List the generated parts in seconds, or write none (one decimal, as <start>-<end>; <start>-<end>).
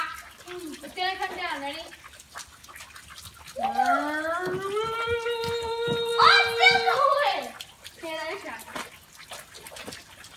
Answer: none